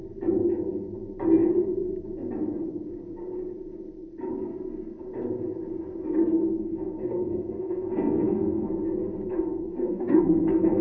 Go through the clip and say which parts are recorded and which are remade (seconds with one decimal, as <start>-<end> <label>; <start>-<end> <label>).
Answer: 0.0-6.7 recorded; 6.7-8.8 remade; 8.8-9.3 recorded; 9.3-10.8 remade